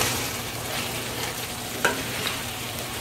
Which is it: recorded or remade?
remade